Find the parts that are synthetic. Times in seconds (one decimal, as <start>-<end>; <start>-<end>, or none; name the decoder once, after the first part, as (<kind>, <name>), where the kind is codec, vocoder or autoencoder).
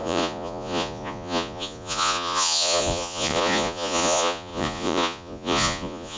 0.0-6.2 (vocoder, Vocos)